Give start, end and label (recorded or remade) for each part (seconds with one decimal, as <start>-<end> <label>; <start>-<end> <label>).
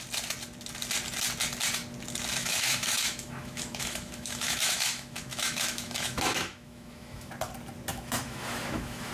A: 0.0-2.4 recorded; 2.4-7.3 remade; 7.3-7.9 recorded; 7.9-9.1 remade